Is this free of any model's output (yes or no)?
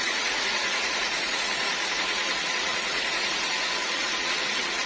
no